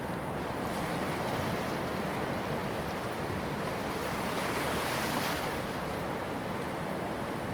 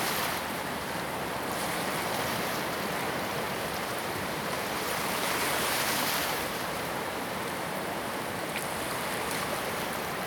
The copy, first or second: second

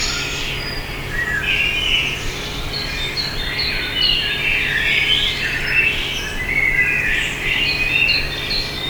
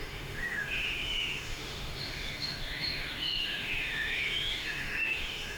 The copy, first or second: second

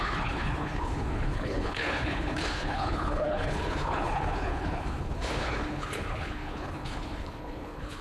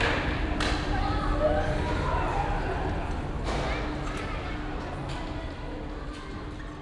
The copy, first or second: first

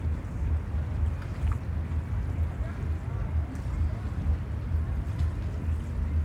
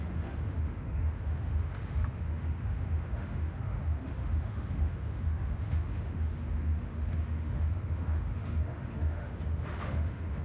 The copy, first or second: second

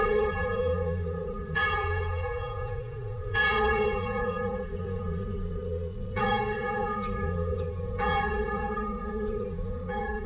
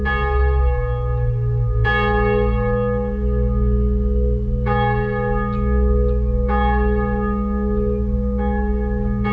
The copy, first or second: first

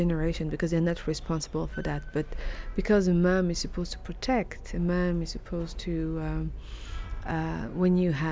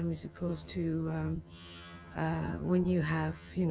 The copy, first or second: second